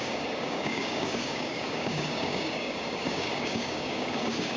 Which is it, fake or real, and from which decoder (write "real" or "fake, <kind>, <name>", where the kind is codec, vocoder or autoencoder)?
fake, codec, DAC